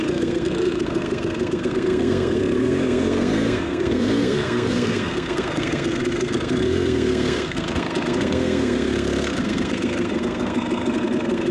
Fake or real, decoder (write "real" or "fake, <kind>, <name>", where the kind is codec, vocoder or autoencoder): fake, codec, SNAC